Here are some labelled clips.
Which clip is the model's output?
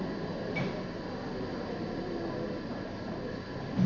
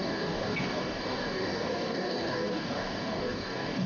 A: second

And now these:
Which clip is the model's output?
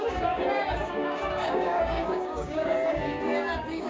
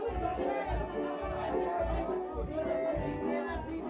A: first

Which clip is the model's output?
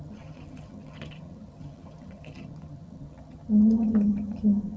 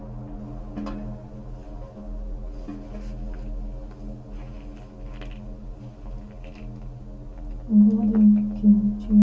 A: first